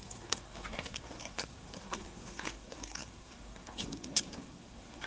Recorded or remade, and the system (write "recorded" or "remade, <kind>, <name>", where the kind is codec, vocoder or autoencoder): remade, codec, SNAC